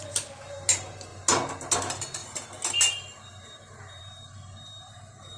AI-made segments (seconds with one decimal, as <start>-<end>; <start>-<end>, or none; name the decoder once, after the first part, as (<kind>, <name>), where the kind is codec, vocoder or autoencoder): none